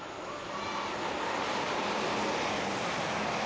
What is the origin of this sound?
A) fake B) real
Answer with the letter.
B